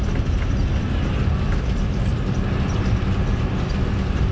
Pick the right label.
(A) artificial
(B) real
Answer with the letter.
A